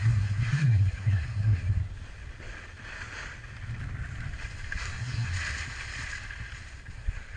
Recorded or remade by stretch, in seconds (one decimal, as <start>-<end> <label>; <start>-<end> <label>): 0.0-1.8 remade; 1.8-4.8 recorded; 4.8-5.3 remade; 5.3-6.9 recorded; 6.9-7.4 remade